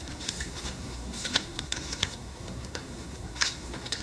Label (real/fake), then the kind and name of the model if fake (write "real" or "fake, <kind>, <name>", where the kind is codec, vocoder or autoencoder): fake, codec, SNAC